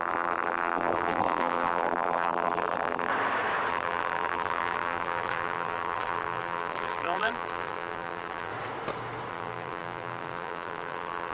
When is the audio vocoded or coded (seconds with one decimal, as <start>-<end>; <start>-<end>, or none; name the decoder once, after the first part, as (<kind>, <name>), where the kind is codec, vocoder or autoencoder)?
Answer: 0.0-3.1 (vocoder, BigVGAN v2); 3.7-8.5; 9.3-11.3